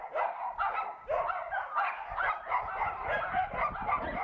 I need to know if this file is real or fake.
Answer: real